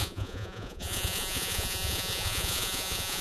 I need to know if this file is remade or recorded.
remade